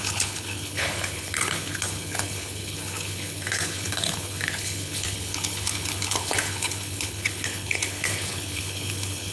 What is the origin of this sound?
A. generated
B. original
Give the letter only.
A